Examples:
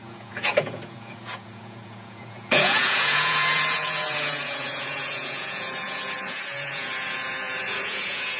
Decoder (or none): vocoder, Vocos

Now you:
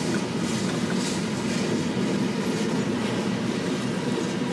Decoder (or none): none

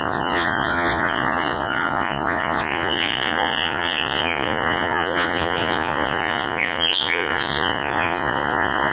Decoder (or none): vocoder, Vocos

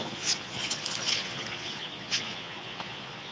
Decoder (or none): vocoder, Vocos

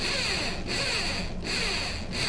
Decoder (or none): none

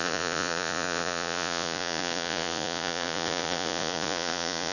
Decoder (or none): vocoder, Vocos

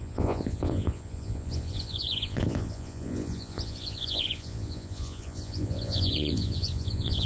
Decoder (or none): vocoder, Vocos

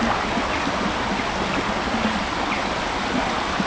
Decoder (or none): none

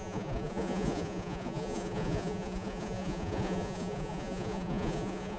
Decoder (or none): vocoder, Vocos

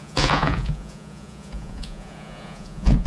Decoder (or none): vocoder, Vocos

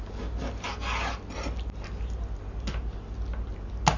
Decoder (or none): none